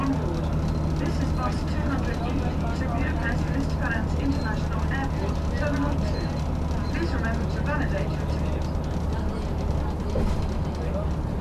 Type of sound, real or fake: real